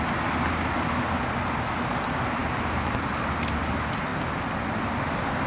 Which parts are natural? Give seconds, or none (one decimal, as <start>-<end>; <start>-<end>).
0.0-5.5

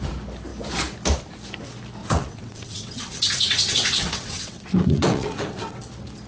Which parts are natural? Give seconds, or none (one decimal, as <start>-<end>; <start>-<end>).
0.0-2.0; 5.8-6.3

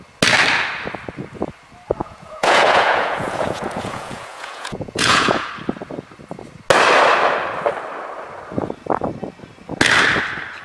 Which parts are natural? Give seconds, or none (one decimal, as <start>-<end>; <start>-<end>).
0.0-2.0; 5.5-10.6

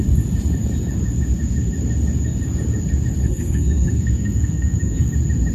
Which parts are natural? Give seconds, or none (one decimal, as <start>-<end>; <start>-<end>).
0.0-3.2; 5.0-5.5

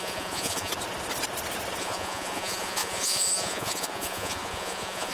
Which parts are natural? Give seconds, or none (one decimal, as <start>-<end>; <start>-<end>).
0.7-1.8

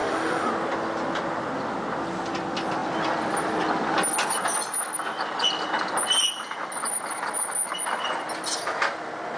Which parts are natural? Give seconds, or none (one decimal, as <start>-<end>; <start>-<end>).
0.5-9.4

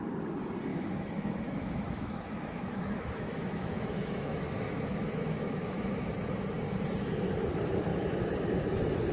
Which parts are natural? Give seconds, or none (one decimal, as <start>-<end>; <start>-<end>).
0.0-0.7; 5.8-9.1